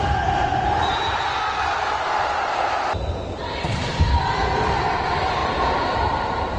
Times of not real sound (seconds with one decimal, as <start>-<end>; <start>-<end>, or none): 0.5-1.3; 3.4-3.9; 5.4-6.6